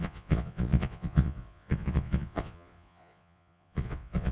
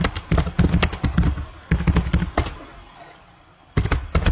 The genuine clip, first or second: second